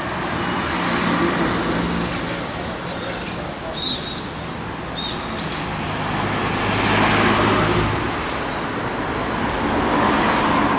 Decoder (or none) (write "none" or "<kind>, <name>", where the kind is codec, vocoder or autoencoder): none